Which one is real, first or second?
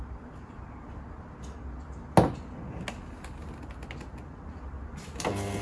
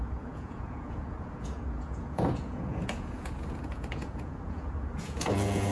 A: first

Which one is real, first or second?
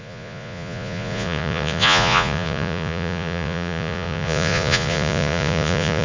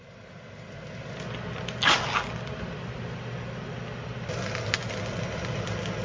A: second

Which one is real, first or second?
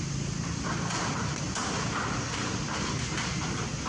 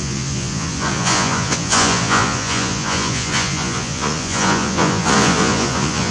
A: first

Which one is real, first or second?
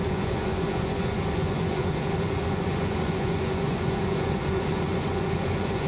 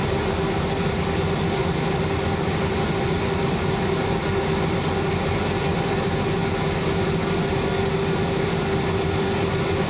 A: second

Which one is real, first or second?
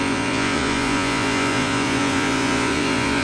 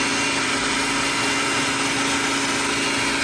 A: second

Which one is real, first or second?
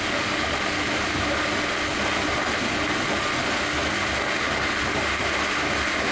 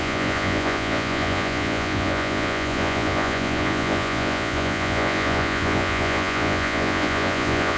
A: first